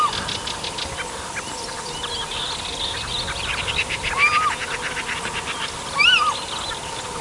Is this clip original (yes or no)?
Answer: yes